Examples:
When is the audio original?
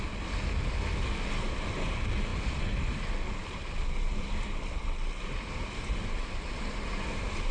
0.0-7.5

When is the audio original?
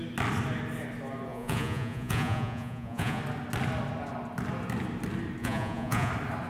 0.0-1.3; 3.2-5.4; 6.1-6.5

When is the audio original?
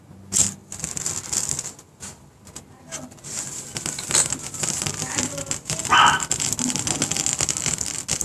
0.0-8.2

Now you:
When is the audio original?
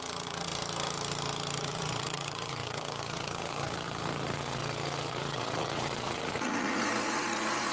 0.5-1.6; 4.6-5.1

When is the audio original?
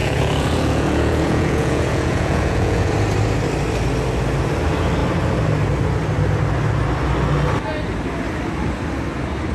2.9-9.5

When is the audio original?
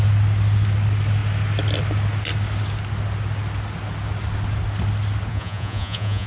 0.0-5.3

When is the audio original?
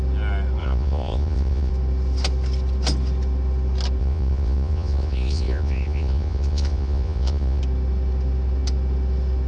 0.0-0.6; 1.7-4.0; 7.6-9.5